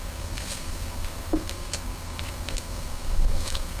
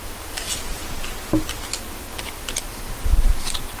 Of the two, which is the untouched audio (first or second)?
second